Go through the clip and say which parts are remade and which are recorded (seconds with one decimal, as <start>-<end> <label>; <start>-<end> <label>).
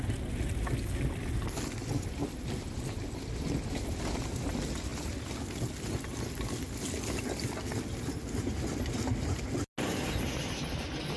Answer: 0.0-11.2 recorded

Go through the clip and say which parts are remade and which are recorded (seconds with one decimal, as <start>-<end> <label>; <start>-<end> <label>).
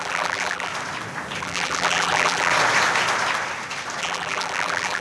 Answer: 0.0-0.7 remade; 0.7-1.4 recorded; 1.4-2.5 remade; 2.5-4.0 recorded; 4.0-5.0 remade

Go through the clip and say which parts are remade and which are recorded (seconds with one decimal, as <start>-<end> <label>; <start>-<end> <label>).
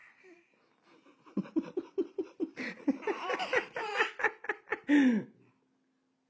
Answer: 0.0-3.8 remade; 3.8-6.3 recorded